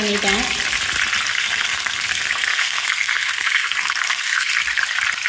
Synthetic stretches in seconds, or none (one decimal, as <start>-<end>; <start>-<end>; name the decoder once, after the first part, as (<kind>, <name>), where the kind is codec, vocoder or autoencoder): 1.3-4.5 (codec, SNAC)